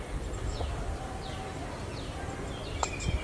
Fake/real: real